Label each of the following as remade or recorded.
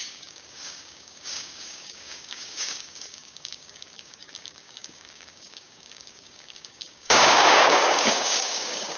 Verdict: remade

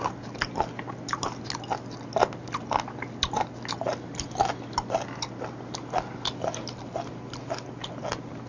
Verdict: recorded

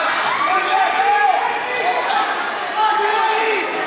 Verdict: recorded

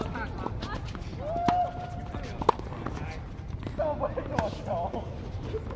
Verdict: recorded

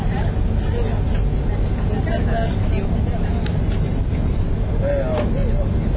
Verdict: recorded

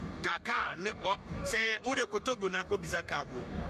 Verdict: remade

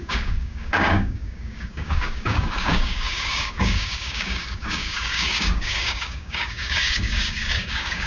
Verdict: remade